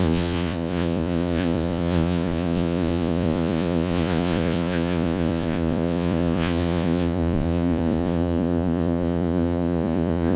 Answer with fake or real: fake